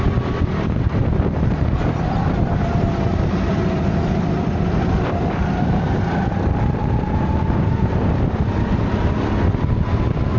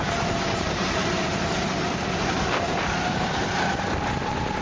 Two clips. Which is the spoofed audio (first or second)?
second